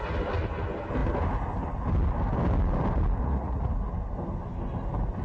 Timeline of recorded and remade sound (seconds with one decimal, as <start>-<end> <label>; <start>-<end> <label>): 0.0-3.2 recorded; 3.2-3.7 remade; 3.7-5.2 recorded